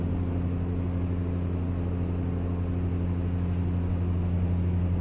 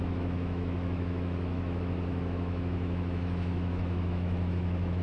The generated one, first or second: second